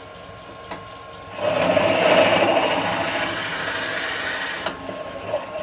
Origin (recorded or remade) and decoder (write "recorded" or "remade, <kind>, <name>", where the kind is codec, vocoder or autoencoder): recorded